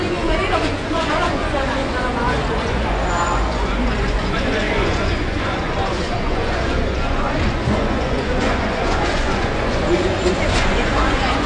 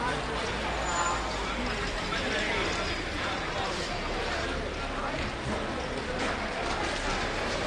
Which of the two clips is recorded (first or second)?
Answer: second